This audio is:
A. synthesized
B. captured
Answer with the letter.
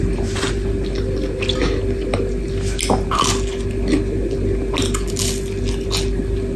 B